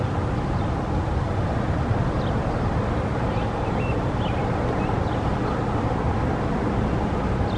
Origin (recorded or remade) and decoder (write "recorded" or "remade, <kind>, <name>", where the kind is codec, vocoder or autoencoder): recorded